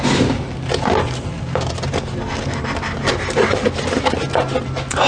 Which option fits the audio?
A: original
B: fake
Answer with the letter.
A